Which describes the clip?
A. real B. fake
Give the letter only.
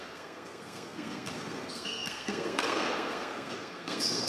B